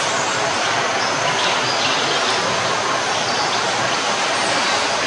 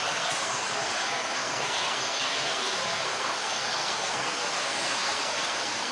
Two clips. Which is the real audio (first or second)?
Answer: first